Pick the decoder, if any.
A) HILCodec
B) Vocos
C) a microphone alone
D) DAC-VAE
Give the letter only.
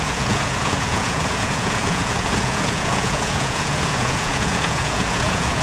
B